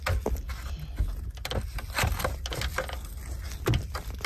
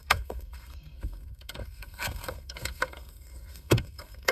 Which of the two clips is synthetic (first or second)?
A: second